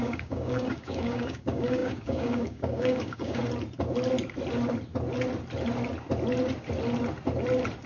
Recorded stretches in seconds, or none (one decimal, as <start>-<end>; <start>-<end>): 3.4-7.9